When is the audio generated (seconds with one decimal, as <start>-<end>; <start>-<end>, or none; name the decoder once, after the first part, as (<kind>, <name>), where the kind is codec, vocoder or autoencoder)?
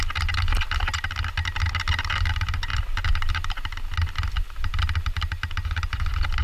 none